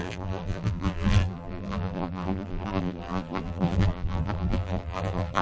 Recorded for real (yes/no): no